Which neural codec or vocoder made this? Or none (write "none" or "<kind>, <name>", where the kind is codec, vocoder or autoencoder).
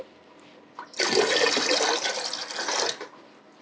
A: none